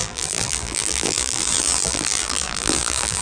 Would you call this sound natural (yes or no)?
no